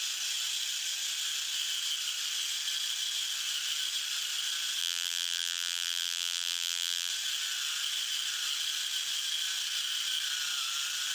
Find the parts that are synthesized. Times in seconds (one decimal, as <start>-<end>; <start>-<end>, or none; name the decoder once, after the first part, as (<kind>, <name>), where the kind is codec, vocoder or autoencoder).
4.8-7.1 (vocoder, BigVGAN v2)